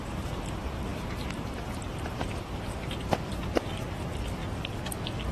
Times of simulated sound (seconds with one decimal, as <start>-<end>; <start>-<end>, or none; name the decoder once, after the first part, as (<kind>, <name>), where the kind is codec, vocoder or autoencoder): 0.0-4.4 (vocoder, BigVGAN v2)